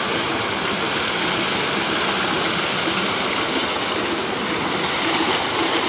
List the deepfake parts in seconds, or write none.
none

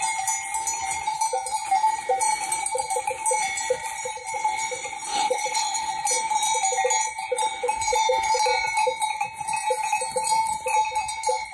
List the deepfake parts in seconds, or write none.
5.1-5.9 (codec, HILCodec)